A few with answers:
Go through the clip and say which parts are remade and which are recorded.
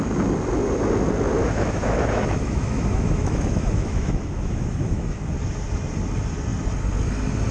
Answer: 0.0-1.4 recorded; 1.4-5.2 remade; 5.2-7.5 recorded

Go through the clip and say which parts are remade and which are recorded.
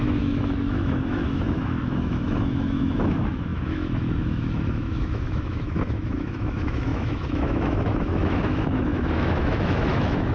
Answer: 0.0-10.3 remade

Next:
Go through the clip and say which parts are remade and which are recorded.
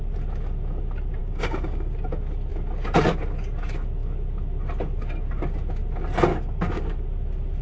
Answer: 0.0-1.2 recorded; 1.2-1.9 remade; 1.9-6.3 recorded; 6.3-6.9 remade; 6.9-7.6 recorded